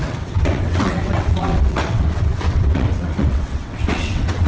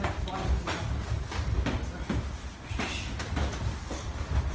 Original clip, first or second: second